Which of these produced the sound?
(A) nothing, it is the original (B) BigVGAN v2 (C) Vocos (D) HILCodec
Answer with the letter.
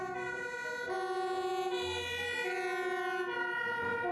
A